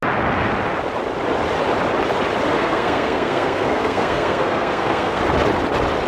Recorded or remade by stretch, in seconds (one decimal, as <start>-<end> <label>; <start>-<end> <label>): 0.0-2.5 recorded; 2.5-5.2 remade; 5.2-6.1 recorded